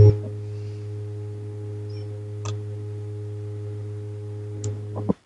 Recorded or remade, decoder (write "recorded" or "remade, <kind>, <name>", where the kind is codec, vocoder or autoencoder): recorded